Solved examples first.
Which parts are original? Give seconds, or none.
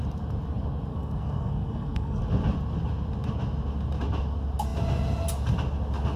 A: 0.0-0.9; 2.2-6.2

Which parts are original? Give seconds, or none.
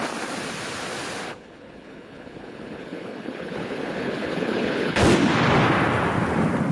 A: 0.0-1.3; 5.0-6.7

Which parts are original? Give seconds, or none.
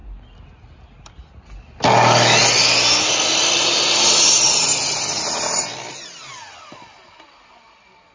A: 0.0-8.1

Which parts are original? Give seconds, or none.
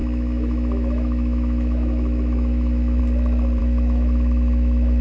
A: 3.0-3.6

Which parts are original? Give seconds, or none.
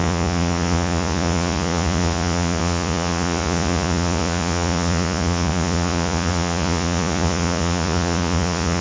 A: none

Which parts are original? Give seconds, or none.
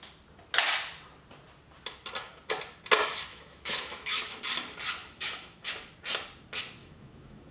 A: 0.0-3.3; 4.4-5.0; 5.7-6.8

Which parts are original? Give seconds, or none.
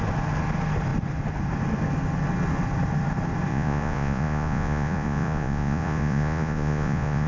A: 0.0-3.5